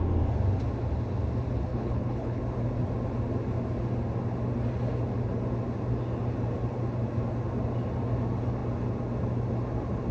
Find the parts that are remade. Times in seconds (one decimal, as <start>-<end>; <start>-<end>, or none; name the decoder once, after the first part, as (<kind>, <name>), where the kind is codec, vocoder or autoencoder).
1.7-2.4 (codec, HILCodec)